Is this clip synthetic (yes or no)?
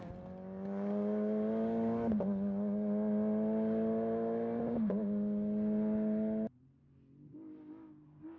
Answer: no